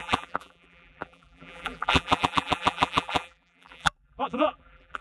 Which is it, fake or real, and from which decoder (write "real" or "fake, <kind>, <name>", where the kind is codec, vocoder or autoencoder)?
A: fake, vocoder, BigVGAN v2